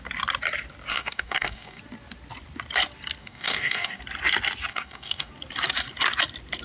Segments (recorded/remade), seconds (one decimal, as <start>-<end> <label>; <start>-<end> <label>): 0.0-0.9 recorded; 0.9-1.8 remade; 1.8-3.2 recorded; 3.2-4.0 remade; 4.0-4.7 recorded; 4.7-5.3 remade; 5.3-6.6 recorded